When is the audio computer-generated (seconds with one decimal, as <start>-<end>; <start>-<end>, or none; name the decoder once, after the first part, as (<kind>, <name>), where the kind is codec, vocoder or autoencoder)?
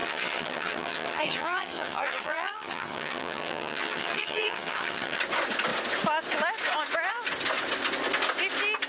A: 0.0-5.2 (vocoder, HiFi-GAN)